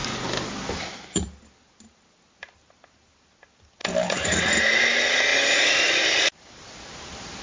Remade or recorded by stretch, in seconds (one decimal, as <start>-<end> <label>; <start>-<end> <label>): 0.0-3.8 recorded; 3.8-4.5 remade; 4.5-7.4 recorded